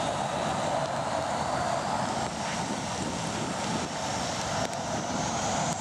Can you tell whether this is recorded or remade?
recorded